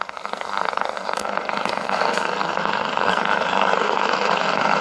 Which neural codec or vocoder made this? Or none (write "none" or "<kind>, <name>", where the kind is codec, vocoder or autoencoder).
codec, SNAC